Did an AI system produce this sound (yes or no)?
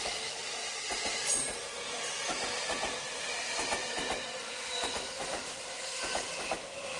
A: no